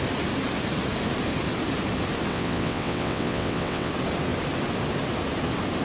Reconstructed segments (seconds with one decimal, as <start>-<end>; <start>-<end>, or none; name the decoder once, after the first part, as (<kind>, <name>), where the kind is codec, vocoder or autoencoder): 2.3-3.9 (vocoder, WaveNeXt)

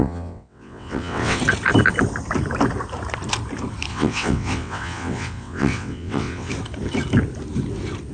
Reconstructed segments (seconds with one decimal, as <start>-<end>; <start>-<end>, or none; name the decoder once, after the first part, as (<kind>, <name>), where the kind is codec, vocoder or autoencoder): 0.0-1.4 (vocoder, WaveNeXt); 3.9-6.5

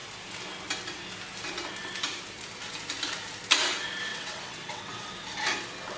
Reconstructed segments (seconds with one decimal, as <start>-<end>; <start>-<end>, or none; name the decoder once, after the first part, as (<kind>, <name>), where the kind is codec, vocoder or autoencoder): 4.1-5.1 (vocoder, WaveNeXt)